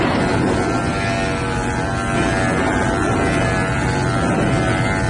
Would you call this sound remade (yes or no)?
no